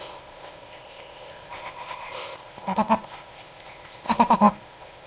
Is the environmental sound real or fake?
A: fake